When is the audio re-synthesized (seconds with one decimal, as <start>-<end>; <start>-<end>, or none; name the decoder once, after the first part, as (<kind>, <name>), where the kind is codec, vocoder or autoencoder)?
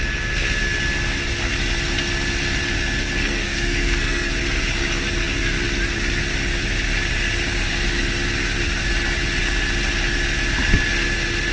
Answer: 3.2-4.3 (codec, SNAC)